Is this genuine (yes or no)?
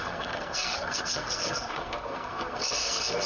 no